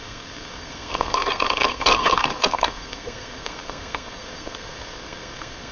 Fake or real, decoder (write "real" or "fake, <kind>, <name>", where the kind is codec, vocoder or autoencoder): fake, codec, SNAC